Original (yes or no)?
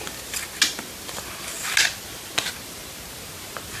yes